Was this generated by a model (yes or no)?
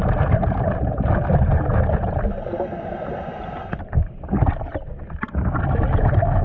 yes